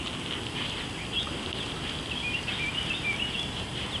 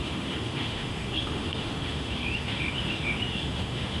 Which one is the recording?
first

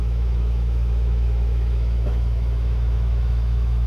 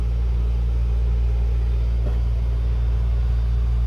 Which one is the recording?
second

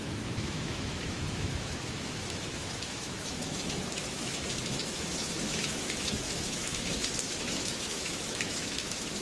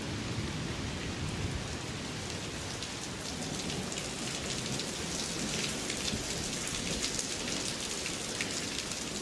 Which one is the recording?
second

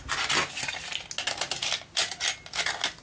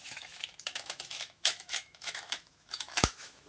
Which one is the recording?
first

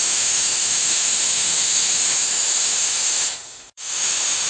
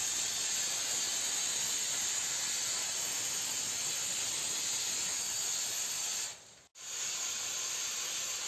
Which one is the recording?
second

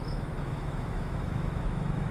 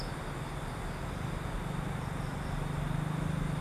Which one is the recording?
second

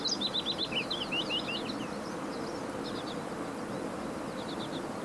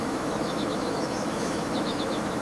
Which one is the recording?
first